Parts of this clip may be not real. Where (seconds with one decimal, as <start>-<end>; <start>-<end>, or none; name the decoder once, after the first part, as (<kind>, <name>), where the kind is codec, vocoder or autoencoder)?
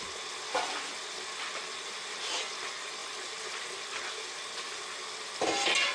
none